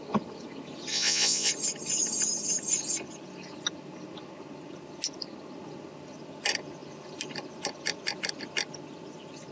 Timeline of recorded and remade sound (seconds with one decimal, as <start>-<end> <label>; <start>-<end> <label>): 0.0-0.9 recorded; 0.9-1.5 remade; 1.5-9.5 recorded